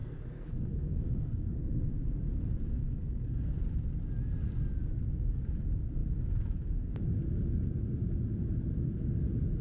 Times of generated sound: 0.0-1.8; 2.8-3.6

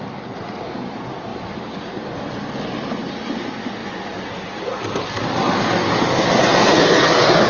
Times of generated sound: none

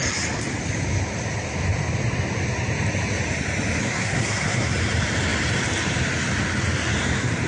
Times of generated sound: 3.8-4.7

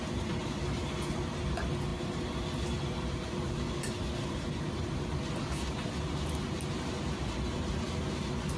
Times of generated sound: none

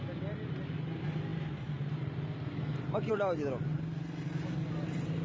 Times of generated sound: none

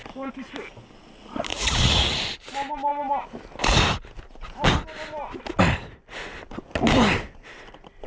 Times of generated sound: 1.5-2.2

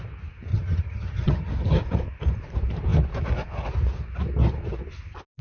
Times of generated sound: 0.5-1.5

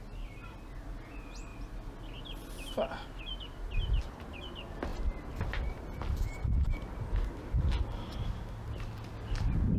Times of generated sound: none